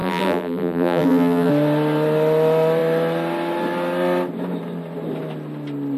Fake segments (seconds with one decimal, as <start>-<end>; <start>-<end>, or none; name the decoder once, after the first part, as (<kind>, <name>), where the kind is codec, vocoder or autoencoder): 0.0-1.5 (vocoder, BigVGAN v2)